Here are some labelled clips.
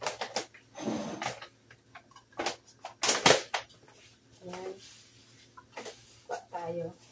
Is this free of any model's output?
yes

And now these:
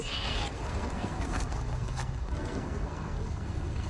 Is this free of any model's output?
no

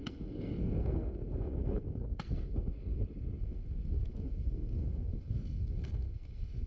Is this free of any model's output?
no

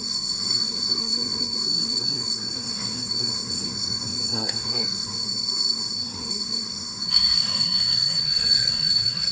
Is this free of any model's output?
no